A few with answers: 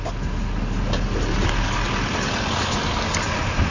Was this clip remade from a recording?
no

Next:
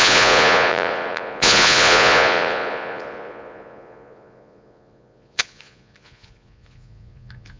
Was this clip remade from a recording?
yes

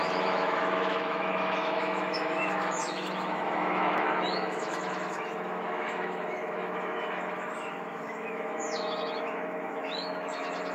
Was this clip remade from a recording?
yes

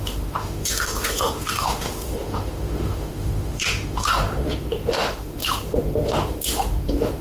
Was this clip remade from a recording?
yes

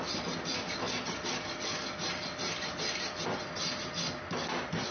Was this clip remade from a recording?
no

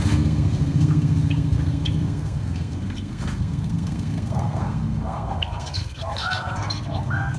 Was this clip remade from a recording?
yes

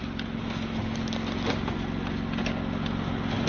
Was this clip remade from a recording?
no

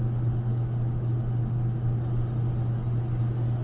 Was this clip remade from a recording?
no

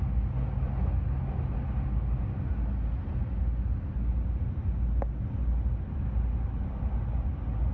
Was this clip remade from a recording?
no